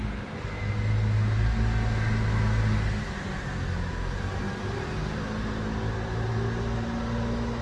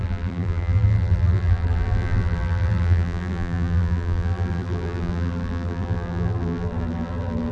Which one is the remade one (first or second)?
second